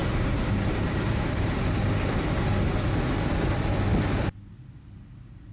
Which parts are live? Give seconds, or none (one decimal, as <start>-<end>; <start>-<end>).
1.8-5.5